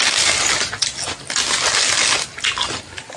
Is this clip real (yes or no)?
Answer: yes